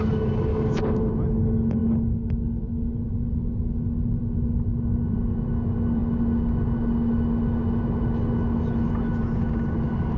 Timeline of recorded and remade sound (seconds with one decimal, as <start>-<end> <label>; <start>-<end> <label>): 0.0-0.5 recorded; 0.5-1.1 remade; 1.1-10.2 recorded